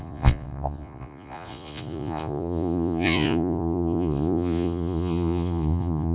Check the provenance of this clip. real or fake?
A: fake